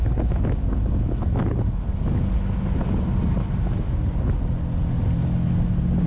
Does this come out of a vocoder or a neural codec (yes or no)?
no